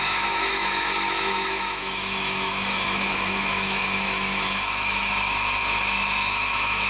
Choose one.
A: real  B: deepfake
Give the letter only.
B